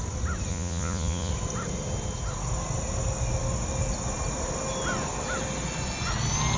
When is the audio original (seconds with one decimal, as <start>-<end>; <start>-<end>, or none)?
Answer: 0.0-0.5; 1.3-6.6